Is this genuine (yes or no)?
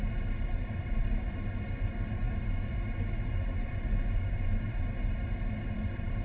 no